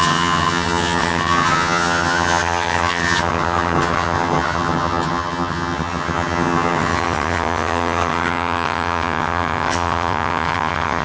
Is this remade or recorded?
remade